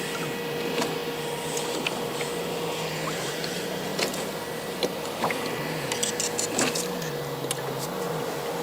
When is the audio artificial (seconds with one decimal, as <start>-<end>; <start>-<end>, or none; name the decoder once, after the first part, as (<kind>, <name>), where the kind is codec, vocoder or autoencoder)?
none